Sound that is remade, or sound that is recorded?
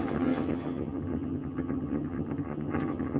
remade